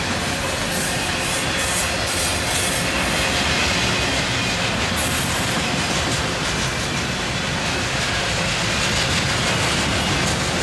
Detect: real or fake real